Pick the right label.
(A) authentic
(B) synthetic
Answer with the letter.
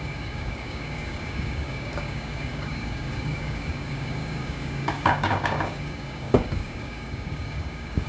B